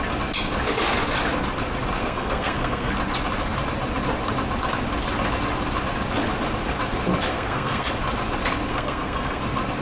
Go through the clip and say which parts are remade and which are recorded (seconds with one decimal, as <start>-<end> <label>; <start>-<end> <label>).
0.0-2.0 recorded; 2.0-2.9 remade; 2.9-7.3 recorded; 7.3-7.9 remade; 7.9-8.7 recorded; 8.7-9.4 remade; 9.4-9.8 recorded